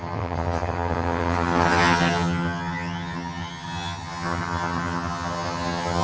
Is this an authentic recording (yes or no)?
no